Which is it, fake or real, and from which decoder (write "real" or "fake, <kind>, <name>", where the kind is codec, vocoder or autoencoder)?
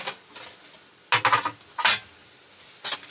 real